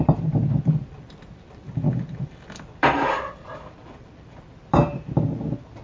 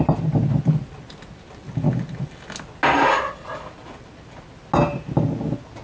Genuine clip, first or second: second